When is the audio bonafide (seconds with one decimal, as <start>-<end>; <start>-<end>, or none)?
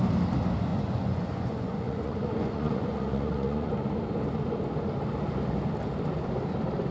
0.0-0.7; 3.7-6.9